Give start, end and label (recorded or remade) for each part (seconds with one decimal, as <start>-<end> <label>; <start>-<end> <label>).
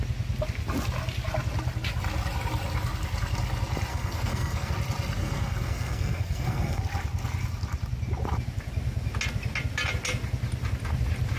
0.0-3.9 recorded; 3.9-4.7 remade; 4.7-5.2 recorded; 5.2-6.8 remade; 6.8-11.4 recorded